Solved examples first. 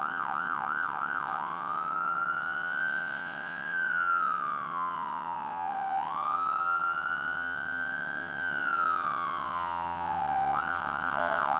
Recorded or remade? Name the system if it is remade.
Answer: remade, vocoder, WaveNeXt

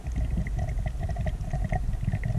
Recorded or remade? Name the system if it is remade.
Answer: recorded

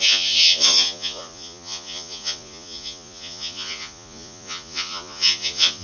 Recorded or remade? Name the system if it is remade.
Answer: remade, vocoder, Vocos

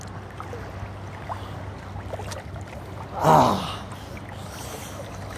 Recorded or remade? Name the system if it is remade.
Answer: recorded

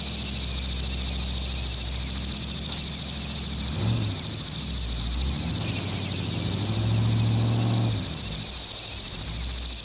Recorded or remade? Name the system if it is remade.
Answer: recorded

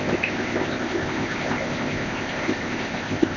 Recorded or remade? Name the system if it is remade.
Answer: remade, codec, ZipCodec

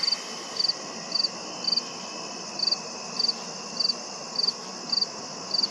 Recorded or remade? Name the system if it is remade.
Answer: recorded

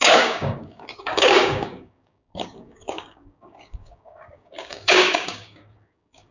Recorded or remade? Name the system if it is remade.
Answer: remade, codec, DAC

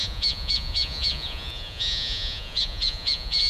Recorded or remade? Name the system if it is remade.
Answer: remade, vocoder, Vocos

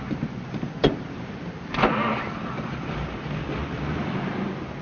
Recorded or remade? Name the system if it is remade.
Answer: recorded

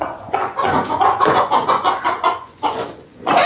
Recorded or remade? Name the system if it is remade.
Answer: remade, vocoder, Vocos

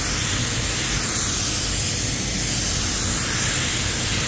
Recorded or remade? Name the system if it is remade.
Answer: recorded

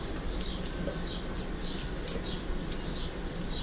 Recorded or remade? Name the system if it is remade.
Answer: recorded